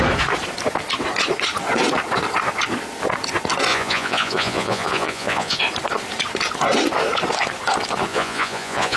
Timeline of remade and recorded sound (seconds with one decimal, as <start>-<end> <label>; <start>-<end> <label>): 0.0-3.7 recorded; 3.7-5.6 remade; 5.6-8.1 recorded; 8.1-9.0 remade